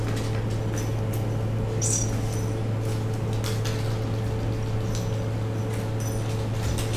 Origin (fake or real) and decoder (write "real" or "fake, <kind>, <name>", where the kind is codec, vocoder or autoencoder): real